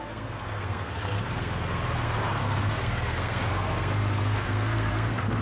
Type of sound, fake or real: fake